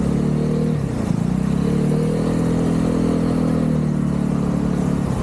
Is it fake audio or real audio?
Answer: real